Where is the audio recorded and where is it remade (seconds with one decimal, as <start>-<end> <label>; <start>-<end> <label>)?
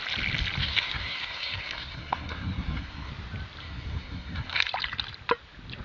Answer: 0.0-0.6 recorded; 0.6-3.1 remade; 3.1-3.6 recorded; 3.6-4.7 remade; 4.7-5.8 recorded